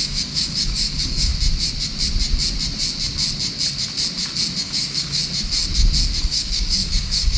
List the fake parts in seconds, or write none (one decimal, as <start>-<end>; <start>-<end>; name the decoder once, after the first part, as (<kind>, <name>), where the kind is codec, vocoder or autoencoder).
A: 0.0-1.3 (codec, DAC); 4.6-5.2; 6.2-7.4